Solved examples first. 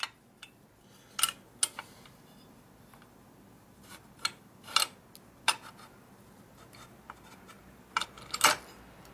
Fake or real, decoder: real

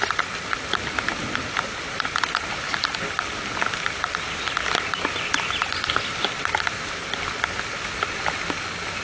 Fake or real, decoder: real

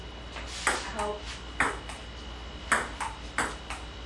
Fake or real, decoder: real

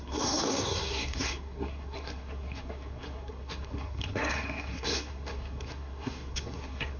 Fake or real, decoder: fake, codec, SNAC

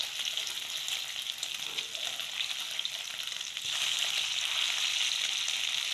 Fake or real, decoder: real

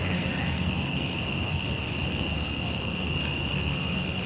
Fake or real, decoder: fake, codec, SNAC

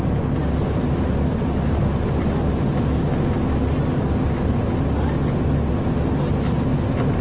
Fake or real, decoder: real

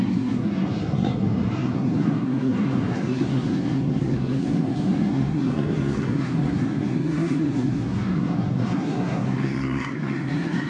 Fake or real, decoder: fake, codec, SNAC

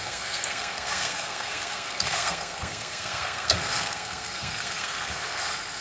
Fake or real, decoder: fake, codec, SNAC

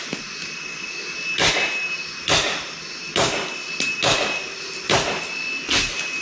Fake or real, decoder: real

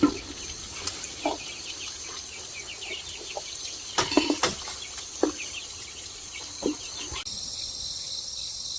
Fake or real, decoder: real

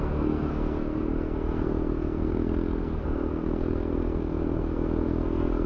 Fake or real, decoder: fake, codec, SNAC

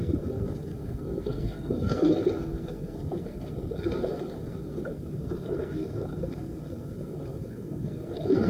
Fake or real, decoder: fake, codec, SNAC